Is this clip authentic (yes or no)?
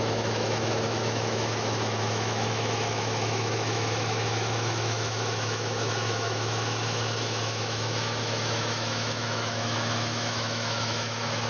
no